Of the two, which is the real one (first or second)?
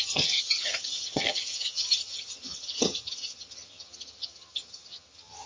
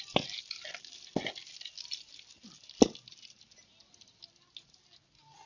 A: second